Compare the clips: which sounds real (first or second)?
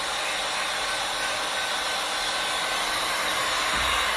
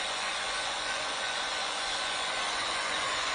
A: first